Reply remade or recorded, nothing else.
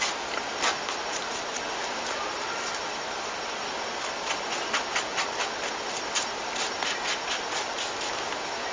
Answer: recorded